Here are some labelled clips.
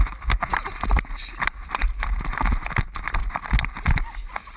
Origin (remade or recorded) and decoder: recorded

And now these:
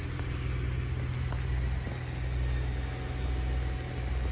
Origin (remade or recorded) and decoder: recorded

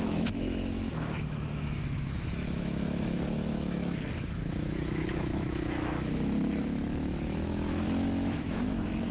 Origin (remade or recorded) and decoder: remade, autoencoder, DAC-VAE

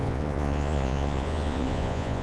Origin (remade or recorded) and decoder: remade, vocoder, Vocos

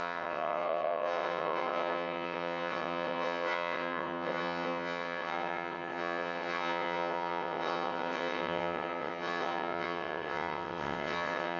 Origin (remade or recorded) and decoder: remade, vocoder, WaveNeXt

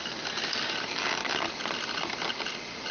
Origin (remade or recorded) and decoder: recorded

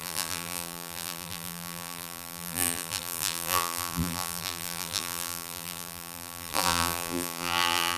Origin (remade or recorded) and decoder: remade, vocoder, BigVGAN v2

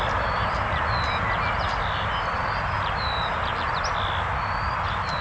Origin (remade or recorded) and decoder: recorded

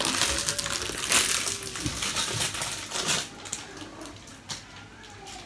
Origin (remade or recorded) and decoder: recorded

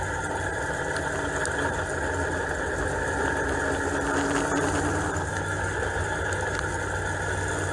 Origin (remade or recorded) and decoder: recorded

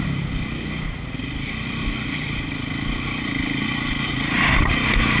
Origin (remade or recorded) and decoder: recorded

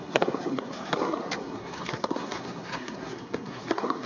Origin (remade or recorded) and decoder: remade, codec, SNAC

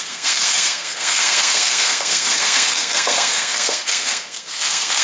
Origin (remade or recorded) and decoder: remade, codec, SNAC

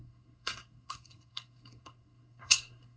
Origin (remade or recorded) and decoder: remade, codec, SNAC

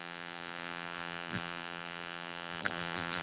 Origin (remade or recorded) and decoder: remade, vocoder, BigVGAN v2